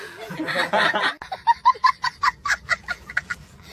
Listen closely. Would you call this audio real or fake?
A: fake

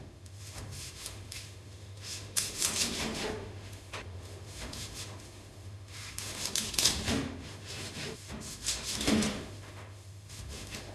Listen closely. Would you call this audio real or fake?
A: fake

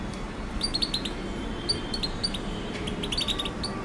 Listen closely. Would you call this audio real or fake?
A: fake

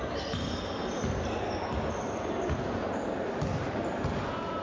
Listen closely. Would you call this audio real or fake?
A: real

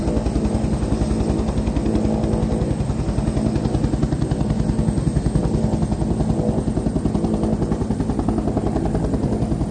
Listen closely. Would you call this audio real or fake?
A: real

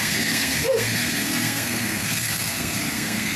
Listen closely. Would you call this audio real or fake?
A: fake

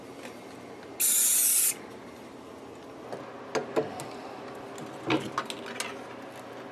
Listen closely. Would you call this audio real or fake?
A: real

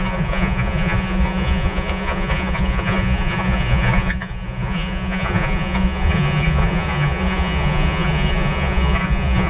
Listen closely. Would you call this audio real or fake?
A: fake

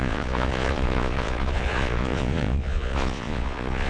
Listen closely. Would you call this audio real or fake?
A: fake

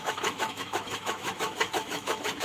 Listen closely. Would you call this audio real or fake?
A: fake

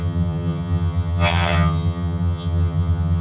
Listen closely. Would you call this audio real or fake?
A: fake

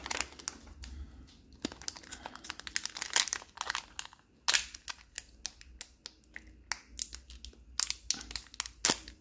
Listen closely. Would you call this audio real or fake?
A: real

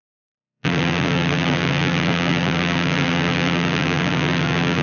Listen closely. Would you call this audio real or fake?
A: fake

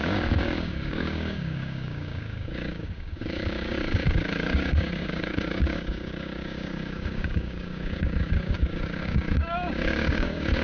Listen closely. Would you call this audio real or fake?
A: fake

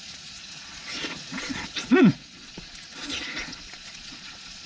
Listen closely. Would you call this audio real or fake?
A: fake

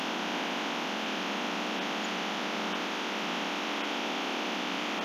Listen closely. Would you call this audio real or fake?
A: real